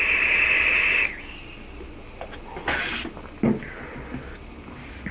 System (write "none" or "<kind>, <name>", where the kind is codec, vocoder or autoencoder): none